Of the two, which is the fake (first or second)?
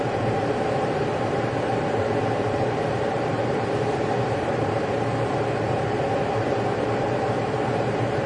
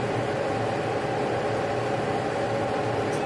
first